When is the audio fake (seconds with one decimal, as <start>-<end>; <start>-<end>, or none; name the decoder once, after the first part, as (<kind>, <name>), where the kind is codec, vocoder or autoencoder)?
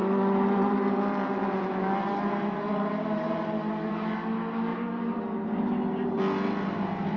0.0-3.9 (vocoder, BigVGAN v2); 4.7-5.2